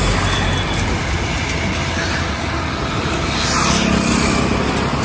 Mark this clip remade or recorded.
recorded